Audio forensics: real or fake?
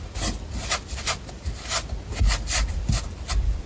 real